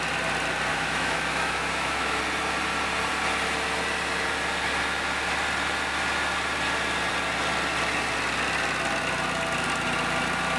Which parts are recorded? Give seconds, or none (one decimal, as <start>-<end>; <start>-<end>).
0.0-0.7; 2.2-10.6